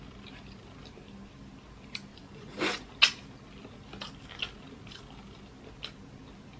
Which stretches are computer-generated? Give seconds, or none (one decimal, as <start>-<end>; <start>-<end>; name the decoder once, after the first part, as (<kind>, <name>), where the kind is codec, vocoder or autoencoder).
2.1-2.9 (vocoder, Vocos)

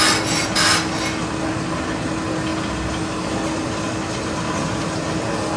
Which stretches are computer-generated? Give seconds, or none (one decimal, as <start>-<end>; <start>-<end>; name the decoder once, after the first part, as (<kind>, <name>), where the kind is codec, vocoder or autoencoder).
none

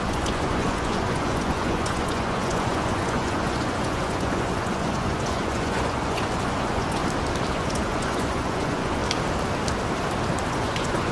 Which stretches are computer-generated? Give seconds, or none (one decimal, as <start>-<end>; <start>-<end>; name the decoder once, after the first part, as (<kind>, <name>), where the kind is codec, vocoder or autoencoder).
0.0-7.0 (vocoder, Vocos); 7.5-9.0; 10.5-11.1

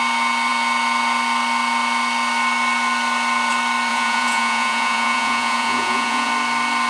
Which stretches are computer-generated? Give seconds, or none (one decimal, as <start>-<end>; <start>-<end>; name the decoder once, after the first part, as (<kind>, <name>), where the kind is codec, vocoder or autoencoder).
3.9-6.3 (vocoder, Vocos)